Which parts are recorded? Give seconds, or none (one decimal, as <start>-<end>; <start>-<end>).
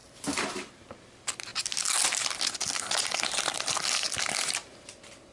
0.9-5.3